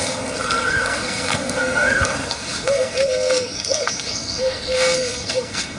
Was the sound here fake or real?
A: fake